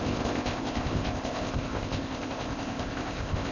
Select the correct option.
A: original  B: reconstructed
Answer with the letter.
B